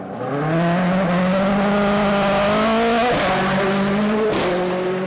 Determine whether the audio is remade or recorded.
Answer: recorded